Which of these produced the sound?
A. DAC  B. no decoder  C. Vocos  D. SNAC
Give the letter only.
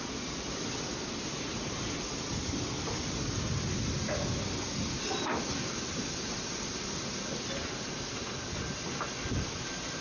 B